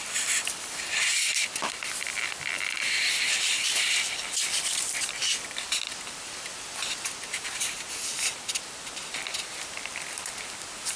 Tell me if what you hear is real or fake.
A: fake